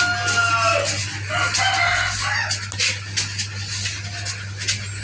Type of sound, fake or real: real